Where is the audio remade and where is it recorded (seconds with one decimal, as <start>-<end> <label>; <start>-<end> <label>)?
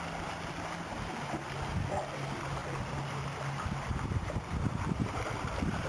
0.0-5.9 remade